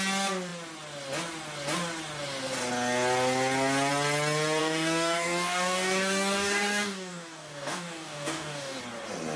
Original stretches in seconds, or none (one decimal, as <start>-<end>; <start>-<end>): 0.0-4.6; 8.8-9.4